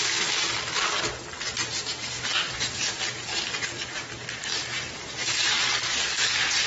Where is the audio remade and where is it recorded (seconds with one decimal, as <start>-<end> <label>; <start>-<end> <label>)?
0.0-4.5 recorded; 4.5-5.6 remade; 5.6-6.7 recorded